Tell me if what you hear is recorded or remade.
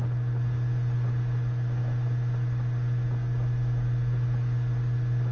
recorded